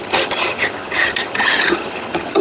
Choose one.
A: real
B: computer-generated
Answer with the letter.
B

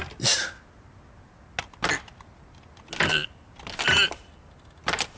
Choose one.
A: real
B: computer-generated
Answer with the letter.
A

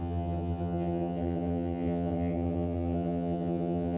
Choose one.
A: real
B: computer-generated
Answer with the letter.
B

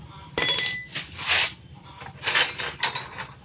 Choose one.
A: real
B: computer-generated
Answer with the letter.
A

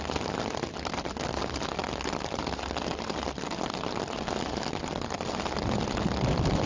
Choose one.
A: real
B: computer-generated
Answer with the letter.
A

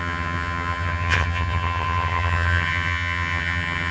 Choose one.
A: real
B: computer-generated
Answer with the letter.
B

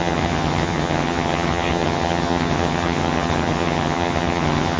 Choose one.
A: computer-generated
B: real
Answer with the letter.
A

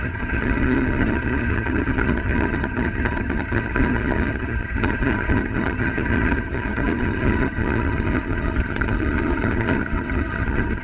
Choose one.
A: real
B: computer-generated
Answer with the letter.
B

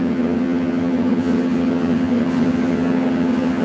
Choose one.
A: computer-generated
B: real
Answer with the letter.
A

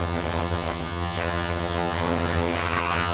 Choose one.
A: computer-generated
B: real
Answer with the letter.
A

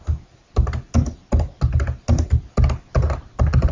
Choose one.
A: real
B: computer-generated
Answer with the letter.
A